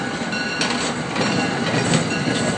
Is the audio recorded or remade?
recorded